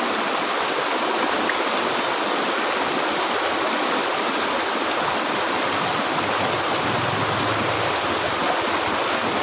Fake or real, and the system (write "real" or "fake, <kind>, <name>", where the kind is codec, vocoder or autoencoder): real